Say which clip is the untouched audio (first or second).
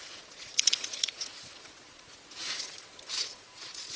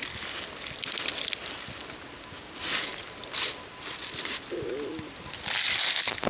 second